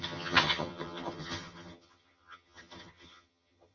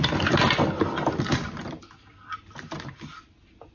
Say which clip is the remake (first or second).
first